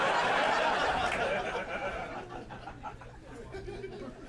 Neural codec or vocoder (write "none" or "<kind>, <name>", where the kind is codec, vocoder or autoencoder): none